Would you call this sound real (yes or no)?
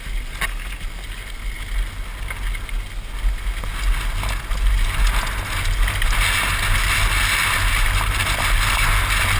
yes